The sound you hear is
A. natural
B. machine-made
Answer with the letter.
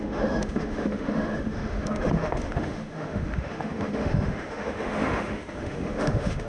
B